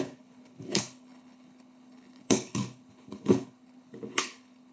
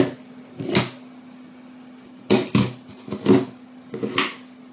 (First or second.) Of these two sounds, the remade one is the first